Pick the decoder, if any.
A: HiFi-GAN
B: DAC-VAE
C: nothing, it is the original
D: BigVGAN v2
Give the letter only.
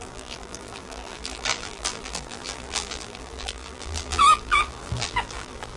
D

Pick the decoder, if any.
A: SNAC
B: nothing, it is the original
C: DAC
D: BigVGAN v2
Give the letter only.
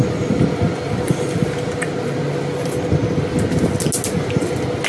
B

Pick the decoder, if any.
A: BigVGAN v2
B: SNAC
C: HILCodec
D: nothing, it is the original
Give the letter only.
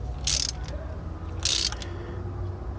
D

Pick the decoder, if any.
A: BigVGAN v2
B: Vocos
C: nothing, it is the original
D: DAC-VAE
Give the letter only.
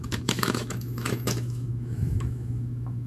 D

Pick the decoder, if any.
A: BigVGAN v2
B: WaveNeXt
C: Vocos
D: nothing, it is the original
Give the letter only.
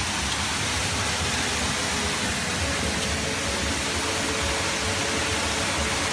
D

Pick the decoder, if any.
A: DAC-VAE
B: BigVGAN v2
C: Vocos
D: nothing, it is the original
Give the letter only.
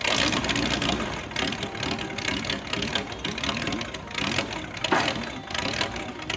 D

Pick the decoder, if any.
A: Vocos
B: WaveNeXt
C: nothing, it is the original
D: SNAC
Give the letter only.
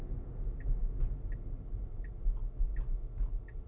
C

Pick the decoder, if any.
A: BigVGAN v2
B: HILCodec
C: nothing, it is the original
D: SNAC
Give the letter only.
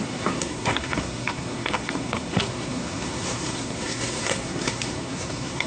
D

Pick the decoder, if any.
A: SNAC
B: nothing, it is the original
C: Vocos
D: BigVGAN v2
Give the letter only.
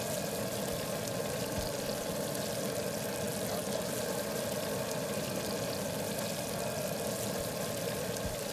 B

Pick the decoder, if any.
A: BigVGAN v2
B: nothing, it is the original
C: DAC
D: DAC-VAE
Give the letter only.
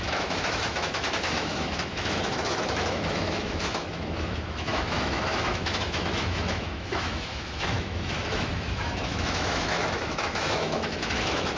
D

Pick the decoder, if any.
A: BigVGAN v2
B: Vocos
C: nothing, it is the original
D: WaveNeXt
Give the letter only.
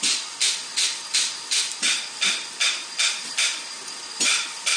C